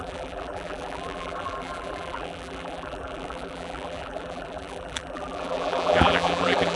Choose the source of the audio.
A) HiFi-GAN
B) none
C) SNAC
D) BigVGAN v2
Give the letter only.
D